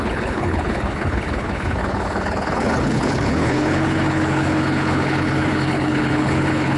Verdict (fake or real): fake